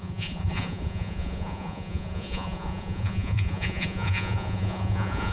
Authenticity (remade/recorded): remade